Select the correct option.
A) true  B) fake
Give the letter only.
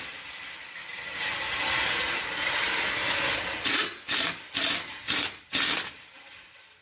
A